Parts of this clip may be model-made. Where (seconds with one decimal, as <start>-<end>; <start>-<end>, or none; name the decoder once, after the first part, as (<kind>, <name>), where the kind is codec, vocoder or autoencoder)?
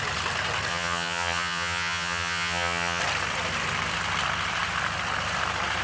0.7-3.0 (vocoder, HiFi-GAN)